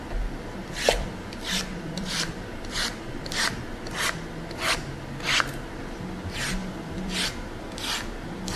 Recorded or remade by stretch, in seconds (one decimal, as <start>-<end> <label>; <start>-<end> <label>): 0.0-0.6 recorded; 0.6-2.5 remade; 2.5-6.6 recorded; 6.6-7.2 remade; 7.2-8.6 recorded